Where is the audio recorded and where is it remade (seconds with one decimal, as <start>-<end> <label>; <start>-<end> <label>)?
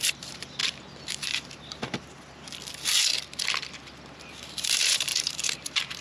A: 0.0-0.6 remade; 0.6-4.2 recorded; 4.2-6.0 remade